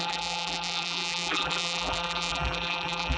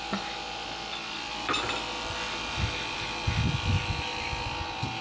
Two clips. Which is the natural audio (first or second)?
second